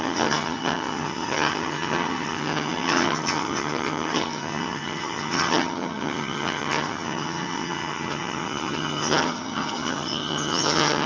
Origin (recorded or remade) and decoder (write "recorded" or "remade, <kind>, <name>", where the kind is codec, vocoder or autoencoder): remade, vocoder, HiFi-GAN